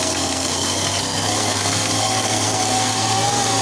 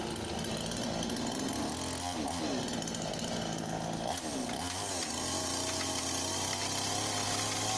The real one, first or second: second